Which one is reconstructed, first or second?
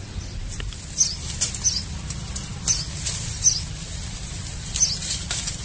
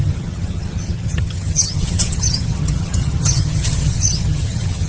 second